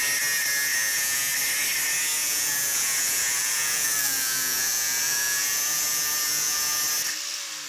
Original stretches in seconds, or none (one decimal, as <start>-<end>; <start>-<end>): 0.0-0.7; 1.3-2.2; 6.8-7.7